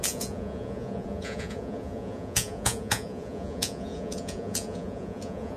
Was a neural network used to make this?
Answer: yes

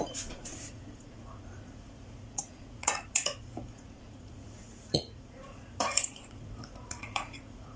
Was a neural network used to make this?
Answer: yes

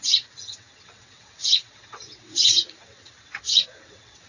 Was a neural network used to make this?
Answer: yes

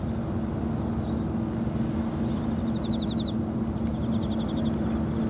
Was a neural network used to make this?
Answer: no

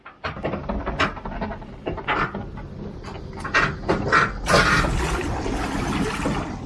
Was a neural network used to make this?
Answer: no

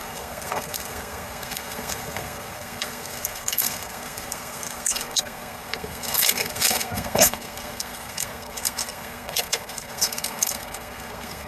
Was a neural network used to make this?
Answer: yes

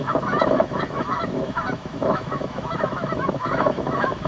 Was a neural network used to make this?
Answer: yes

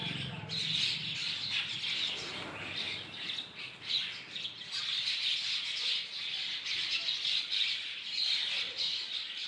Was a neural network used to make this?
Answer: no